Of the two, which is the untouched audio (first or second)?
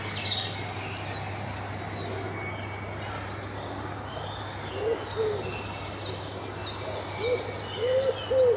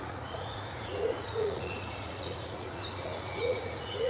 first